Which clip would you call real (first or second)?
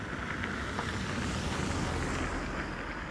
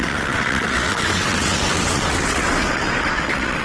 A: first